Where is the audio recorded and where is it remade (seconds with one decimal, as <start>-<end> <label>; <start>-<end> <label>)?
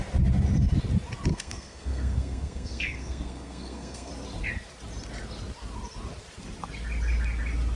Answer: 0.0-1.3 recorded; 1.3-4.1 remade; 4.1-7.7 recorded